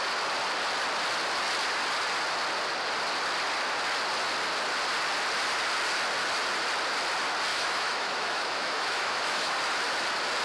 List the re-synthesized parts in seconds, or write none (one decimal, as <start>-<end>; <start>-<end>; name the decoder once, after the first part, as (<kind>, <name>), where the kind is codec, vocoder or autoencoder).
7.5-9.5 (autoencoder, DAC-VAE)